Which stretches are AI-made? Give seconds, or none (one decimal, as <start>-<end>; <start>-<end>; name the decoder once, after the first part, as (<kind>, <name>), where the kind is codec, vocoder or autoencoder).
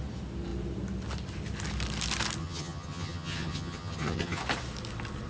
2.4-4.4 (vocoder, HiFi-GAN)